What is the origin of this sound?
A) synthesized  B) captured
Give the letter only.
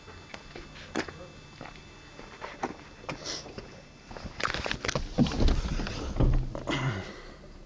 B